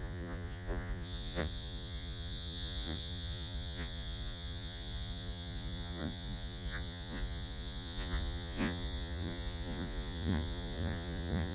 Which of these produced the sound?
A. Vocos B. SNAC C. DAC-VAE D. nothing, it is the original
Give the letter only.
A